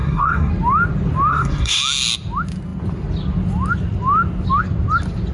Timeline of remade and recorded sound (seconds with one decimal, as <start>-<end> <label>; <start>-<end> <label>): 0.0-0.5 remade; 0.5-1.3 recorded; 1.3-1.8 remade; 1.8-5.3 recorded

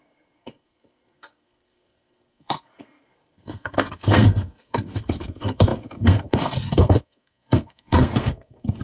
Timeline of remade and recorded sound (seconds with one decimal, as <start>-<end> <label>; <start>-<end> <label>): 0.0-8.8 remade

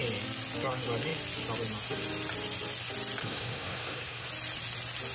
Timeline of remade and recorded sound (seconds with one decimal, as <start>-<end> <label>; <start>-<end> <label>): 0.0-3.2 recorded; 3.2-4.3 remade; 4.3-5.1 recorded

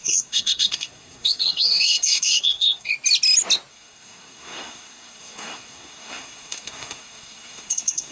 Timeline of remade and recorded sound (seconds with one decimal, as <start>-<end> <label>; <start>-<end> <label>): 0.0-2.9 remade; 2.9-3.7 recorded; 3.7-8.1 remade